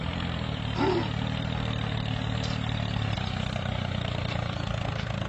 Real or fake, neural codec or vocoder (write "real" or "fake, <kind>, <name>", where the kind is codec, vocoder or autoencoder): real